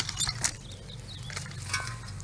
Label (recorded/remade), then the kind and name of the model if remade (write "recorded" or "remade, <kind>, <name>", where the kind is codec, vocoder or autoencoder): recorded